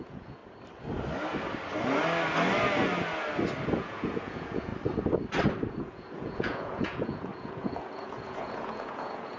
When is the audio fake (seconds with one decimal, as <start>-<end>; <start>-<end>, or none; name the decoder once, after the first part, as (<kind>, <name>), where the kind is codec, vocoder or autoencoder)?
0.0-0.4 (vocoder, Vocos); 3.8-4.7; 5.8-9.4